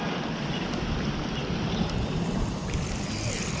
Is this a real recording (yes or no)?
yes